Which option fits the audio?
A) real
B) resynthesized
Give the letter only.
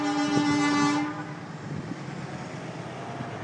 A